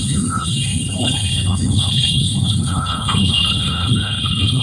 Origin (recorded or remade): remade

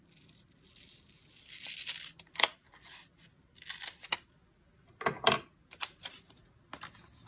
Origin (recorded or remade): recorded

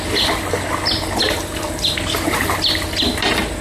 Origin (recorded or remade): recorded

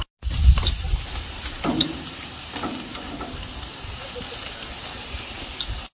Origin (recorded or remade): recorded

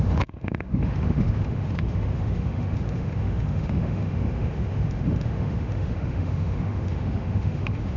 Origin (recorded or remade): remade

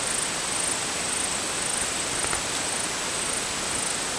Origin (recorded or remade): recorded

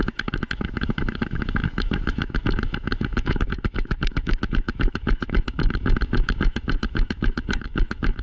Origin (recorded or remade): remade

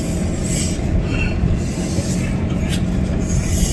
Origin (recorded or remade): recorded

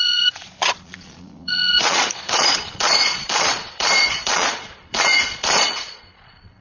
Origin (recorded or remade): remade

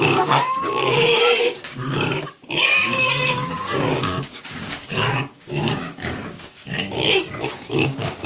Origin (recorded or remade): remade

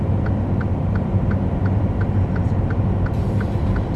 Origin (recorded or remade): remade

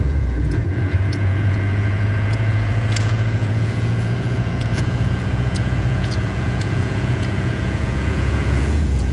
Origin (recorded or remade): remade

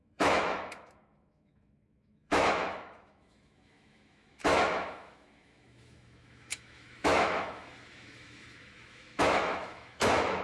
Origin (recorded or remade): remade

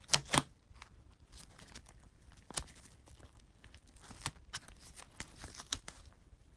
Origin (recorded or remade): recorded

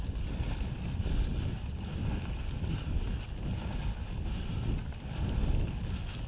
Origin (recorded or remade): recorded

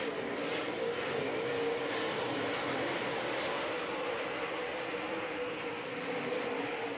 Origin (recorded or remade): recorded